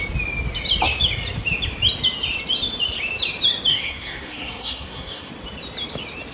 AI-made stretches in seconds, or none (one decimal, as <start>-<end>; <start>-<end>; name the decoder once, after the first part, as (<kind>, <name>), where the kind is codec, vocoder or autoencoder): 3.7-5.3 (codec, SNAC)